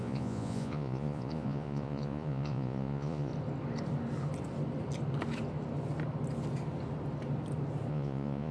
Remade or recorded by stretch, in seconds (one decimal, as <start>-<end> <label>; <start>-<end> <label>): 0.0-3.3 remade; 3.3-7.9 recorded; 7.9-8.5 remade